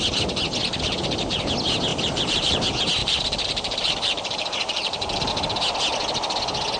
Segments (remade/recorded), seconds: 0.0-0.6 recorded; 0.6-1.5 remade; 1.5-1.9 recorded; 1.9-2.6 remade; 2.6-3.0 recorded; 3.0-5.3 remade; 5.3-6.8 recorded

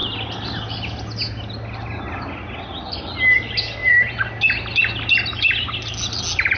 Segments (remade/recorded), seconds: 0.0-3.8 recorded; 3.8-4.3 remade; 4.3-6.6 recorded

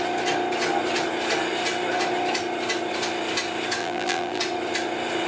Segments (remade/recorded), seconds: 0.0-3.8 recorded; 3.8-4.4 remade; 4.4-5.3 recorded

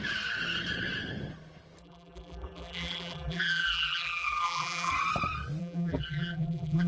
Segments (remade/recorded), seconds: 0.0-1.8 recorded; 1.8-4.9 remade; 4.9-5.6 recorded; 5.6-6.9 remade

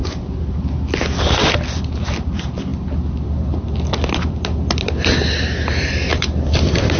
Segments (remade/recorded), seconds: 0.0-2.7 recorded; 2.7-4.9 remade; 4.9-6.1 recorded; 6.1-7.0 remade

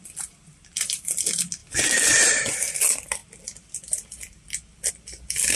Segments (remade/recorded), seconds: 0.0-5.6 recorded

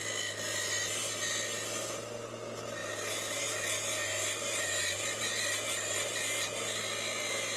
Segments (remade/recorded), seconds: 0.0-7.6 recorded

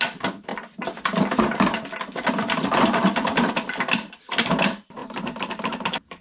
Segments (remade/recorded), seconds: 0.0-0.5 remade; 0.5-4.2 recorded; 4.2-6.2 remade